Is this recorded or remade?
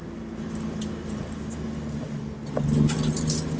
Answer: recorded